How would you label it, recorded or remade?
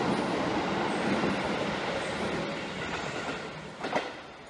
recorded